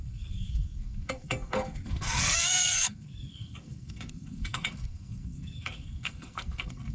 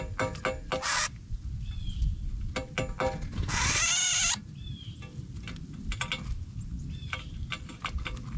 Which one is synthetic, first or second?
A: first